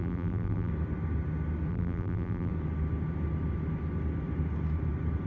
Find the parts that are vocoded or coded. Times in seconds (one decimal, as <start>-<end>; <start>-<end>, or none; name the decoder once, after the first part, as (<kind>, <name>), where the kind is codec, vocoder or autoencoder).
0.0-0.7 (vocoder, BigVGAN v2); 1.7-2.5